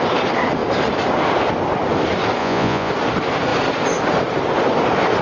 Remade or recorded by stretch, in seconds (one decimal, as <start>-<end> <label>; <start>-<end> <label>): 0.0-2.4 recorded; 2.4-2.9 remade; 2.9-5.2 recorded